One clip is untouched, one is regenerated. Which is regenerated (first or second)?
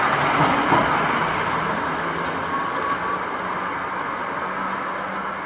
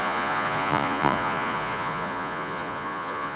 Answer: second